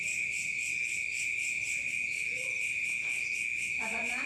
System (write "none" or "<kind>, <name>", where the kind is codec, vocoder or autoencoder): none